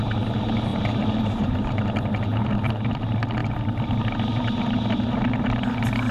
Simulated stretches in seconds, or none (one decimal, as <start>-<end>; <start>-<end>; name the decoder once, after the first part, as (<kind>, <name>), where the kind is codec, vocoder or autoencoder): 0.7-1.8 (vocoder, BigVGAN v2)